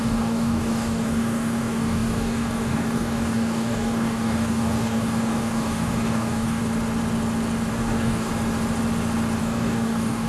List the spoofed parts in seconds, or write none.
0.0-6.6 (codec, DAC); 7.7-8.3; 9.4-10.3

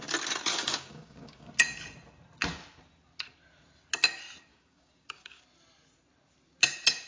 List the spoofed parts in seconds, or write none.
0.5-1.5 (codec, DAC); 4.5-5.4

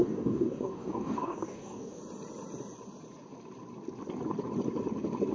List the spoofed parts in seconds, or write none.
0.0-2.0 (codec, DAC)

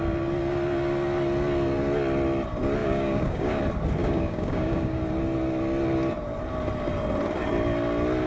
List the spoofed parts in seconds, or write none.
2.8-3.6 (codec, DAC); 4.0-5.0

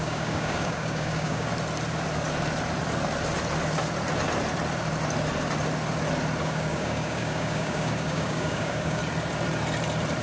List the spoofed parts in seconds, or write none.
0.0-1.5 (codec, DAC); 6.4-9.0

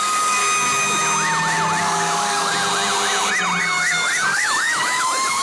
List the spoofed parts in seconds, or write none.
0.0-0.4 (codec, DAC); 1.8-2.5; 3.6-5.4